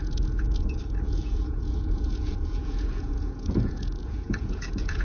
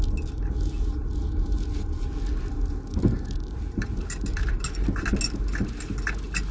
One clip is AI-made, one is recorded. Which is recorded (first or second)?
second